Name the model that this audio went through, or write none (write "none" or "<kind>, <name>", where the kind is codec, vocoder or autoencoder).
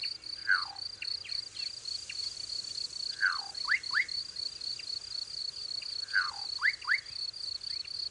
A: none